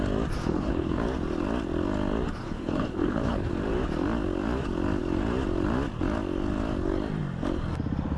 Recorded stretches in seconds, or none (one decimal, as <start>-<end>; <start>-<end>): 0.0-0.4; 1.0-2.4; 3.5-8.2